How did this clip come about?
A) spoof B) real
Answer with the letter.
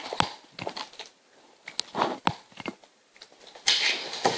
B